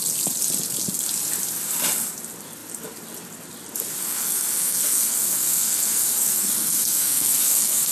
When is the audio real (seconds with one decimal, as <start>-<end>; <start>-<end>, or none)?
0.0-4.0